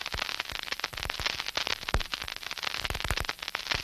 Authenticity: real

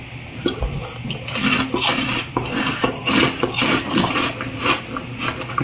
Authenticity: real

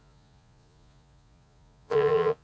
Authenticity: fake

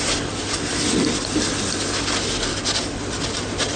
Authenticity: real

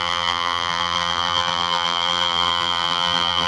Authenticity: fake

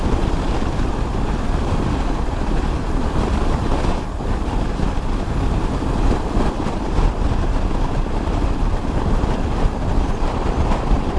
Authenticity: fake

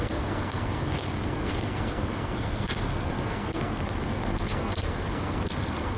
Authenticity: fake